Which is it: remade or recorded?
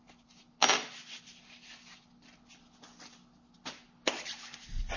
recorded